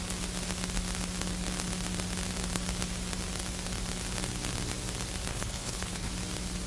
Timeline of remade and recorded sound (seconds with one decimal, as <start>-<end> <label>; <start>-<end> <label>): 0.0-5.3 recorded; 5.3-6.1 remade; 6.1-6.7 recorded